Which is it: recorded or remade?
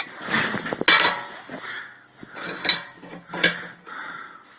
recorded